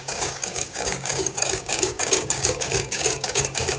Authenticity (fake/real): fake